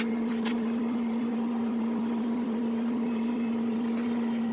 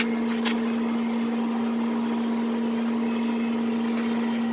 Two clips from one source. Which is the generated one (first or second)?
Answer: first